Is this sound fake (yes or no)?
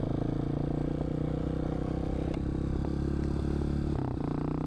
no